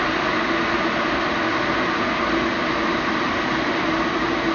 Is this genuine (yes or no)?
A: yes